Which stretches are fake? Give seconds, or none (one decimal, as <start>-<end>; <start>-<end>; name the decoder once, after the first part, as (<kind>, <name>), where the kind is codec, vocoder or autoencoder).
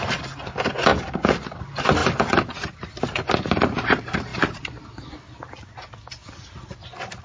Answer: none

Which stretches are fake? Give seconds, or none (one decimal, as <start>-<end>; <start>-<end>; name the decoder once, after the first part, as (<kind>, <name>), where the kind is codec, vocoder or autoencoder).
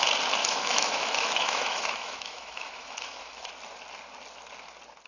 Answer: 0.4-3.5 (autoencoder, DAC-VAE)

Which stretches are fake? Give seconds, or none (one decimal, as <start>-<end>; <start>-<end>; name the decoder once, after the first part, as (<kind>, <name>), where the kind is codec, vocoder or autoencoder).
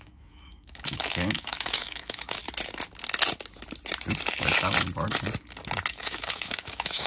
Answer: 0.0-2.4 (autoencoder, DAC-VAE); 5.9-7.1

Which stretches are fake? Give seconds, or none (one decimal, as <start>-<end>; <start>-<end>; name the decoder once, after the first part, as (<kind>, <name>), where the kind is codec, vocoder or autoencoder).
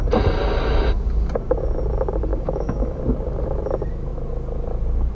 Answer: 2.3-3.0 (autoencoder, DAC-VAE)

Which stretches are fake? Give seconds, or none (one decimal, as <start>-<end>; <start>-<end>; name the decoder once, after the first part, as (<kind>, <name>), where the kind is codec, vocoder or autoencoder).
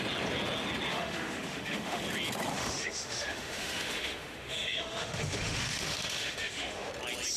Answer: 0.9-2.0 (autoencoder, DAC-VAE); 2.5-6.9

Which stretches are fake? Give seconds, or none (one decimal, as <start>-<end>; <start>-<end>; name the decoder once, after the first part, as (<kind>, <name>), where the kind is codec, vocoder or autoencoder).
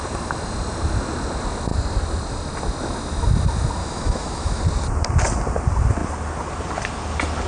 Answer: 3.8-4.6 (autoencoder, DAC-VAE)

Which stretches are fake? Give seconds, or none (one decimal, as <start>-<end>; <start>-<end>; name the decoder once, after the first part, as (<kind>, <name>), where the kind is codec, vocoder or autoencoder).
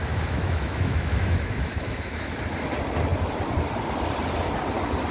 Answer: 0.0-2.4 (autoencoder, DAC-VAE)